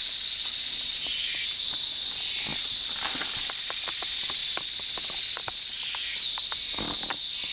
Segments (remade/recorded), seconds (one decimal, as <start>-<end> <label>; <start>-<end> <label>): 0.0-7.5 recorded